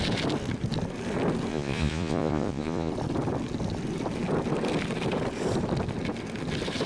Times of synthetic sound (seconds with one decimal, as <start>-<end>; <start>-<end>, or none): 1.5-2.9